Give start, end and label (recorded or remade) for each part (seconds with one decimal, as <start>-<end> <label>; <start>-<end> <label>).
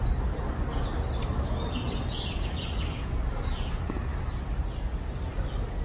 0.0-5.8 recorded